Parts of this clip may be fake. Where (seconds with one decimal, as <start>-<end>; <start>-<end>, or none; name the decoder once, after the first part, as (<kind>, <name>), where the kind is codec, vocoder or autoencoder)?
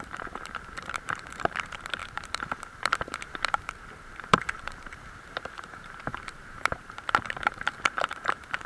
0.0-8.7 (vocoder, BigVGAN v2)